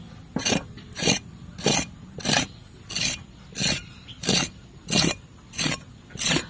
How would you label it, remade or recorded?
recorded